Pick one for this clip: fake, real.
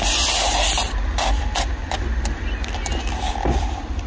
real